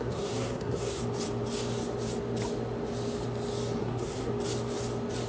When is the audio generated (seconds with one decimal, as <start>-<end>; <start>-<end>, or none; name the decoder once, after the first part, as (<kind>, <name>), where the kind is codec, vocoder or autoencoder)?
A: 0.0-1.0 (codec, SNAC); 3.8-4.3